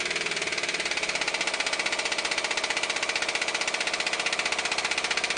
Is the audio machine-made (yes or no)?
no